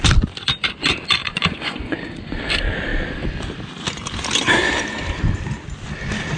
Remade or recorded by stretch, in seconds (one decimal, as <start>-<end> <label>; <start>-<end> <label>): 0.0-1.2 recorded; 1.2-2.4 remade; 2.4-6.4 recorded